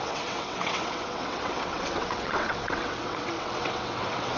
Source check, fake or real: fake